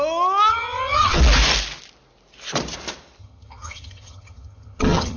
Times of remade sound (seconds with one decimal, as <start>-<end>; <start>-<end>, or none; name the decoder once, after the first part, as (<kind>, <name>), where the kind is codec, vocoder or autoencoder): 0.5-1.2 (vocoder, HiFi-GAN); 3.2-5.2